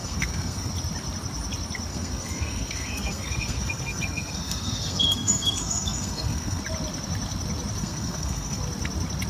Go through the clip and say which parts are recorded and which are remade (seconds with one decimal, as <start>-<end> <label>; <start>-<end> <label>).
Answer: 0.0-0.7 remade; 0.7-1.9 recorded; 1.9-6.6 remade; 6.6-7.8 recorded; 7.8-8.6 remade; 8.6-9.3 recorded